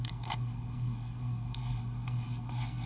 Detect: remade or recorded remade